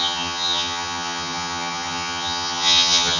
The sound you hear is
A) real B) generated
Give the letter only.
B